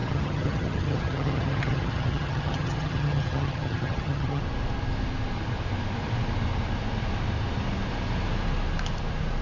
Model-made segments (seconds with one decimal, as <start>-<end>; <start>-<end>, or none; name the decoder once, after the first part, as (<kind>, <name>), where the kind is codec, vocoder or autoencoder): 0.0-4.4 (vocoder, HiFi-GAN)